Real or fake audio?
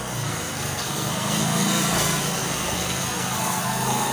fake